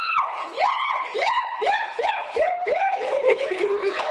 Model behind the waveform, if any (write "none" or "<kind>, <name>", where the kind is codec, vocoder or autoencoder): codec, HILCodec